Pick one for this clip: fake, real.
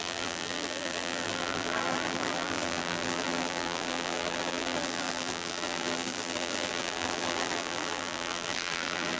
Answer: fake